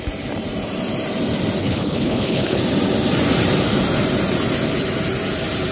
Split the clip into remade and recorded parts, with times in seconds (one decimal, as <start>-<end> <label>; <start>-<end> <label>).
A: 0.0-1.6 recorded; 1.6-2.6 remade; 2.6-5.7 recorded